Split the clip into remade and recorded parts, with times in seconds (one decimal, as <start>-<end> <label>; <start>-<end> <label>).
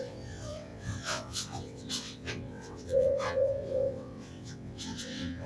0.0-5.5 remade